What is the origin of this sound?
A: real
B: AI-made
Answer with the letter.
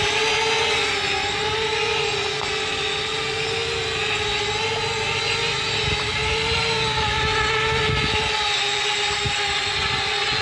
A